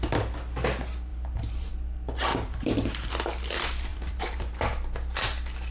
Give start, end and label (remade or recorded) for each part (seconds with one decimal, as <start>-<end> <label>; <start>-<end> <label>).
0.0-1.1 recorded; 1.1-1.7 remade; 1.7-2.3 recorded; 2.3-3.1 remade; 3.1-3.9 recorded; 3.9-4.5 remade; 4.5-5.7 recorded